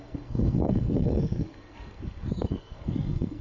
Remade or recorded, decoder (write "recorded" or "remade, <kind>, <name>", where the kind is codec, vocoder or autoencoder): remade, codec, SNAC